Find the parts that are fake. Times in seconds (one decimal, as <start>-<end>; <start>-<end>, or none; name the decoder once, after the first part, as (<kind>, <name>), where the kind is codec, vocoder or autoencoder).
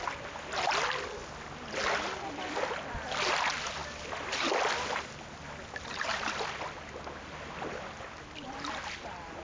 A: none